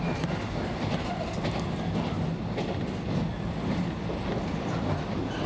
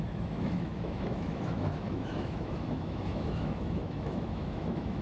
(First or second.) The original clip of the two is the first